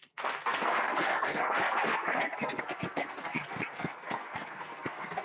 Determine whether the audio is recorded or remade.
remade